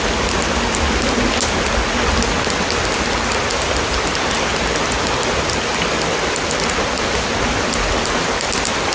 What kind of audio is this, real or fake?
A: real